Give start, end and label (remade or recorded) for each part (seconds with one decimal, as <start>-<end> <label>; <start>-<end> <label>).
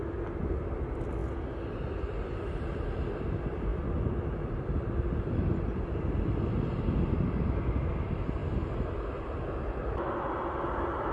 0.0-11.1 recorded